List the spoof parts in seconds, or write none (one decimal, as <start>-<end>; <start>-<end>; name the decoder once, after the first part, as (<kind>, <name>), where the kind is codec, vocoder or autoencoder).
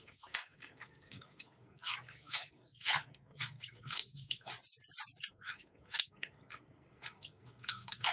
0.0-4.5 (codec, SNAC); 5.3-8.1